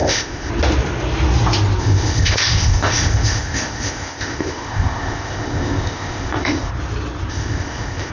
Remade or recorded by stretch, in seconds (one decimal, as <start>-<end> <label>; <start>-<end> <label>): 0.0-0.5 remade; 0.5-1.8 recorded; 1.8-6.7 remade; 6.7-7.3 recorded; 7.3-8.1 remade